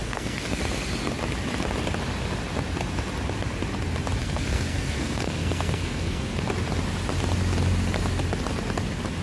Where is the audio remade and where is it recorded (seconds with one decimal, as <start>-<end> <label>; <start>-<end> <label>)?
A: 0.0-0.6 remade; 0.6-4.2 recorded; 4.2-6.4 remade; 6.4-9.2 recorded